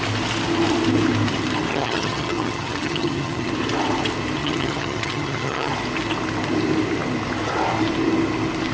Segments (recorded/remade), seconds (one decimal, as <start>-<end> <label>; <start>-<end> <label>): 0.0-1.7 recorded; 1.7-3.5 remade; 3.5-4.4 recorded; 4.4-5.7 remade; 5.7-8.7 recorded